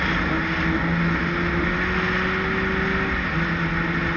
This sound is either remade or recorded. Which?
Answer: recorded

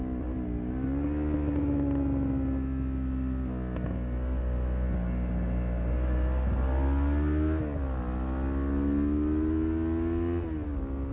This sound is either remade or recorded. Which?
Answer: recorded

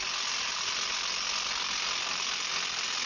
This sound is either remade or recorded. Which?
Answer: recorded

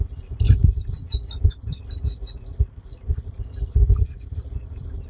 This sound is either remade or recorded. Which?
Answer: recorded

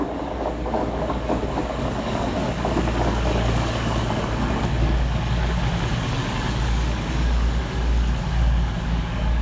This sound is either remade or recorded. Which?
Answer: remade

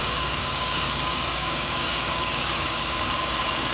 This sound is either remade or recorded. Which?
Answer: remade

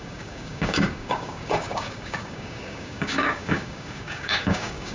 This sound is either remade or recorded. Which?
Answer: remade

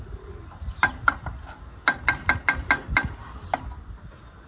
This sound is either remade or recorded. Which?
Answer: recorded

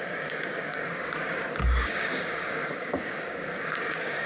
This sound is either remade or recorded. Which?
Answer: remade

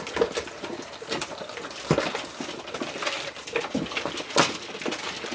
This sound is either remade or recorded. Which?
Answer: recorded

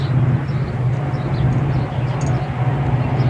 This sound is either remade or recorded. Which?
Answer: recorded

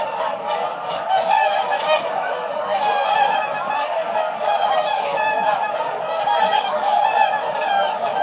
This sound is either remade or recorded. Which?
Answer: remade